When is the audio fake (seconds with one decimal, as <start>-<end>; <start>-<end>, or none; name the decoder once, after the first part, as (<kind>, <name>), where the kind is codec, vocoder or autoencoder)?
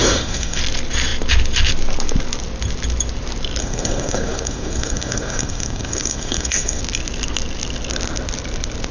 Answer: 0.0-0.6 (codec, SNAC); 3.6-6.8